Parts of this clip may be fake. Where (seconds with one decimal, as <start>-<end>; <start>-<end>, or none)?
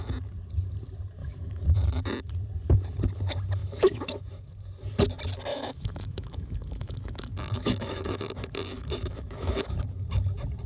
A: 1.2-1.7; 3.6-4.3; 5.5-9.8